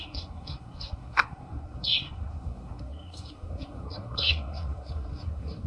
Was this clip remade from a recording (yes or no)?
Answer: yes